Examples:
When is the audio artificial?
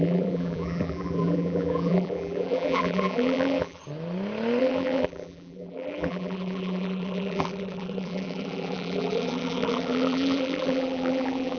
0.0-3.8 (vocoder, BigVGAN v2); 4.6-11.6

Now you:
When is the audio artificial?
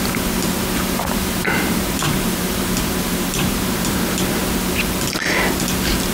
1.0-4.4 (vocoder, BigVGAN v2)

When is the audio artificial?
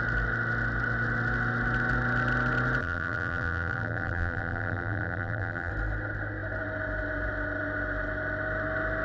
2.8-5.7 (vocoder, BigVGAN v2)